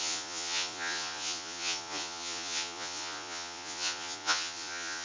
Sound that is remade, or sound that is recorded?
remade